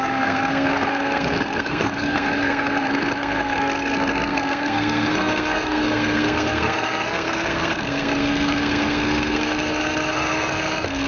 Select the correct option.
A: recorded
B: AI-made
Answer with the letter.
B